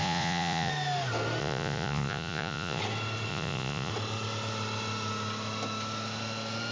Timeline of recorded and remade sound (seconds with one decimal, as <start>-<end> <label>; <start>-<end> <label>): 0.0-0.7 remade; 0.7-1.4 recorded; 1.4-2.8 remade; 2.8-3.3 recorded; 3.3-3.9 remade; 3.9-6.7 recorded